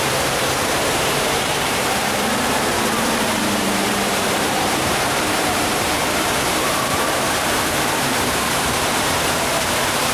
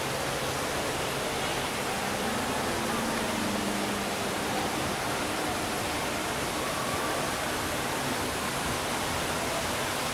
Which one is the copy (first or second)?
first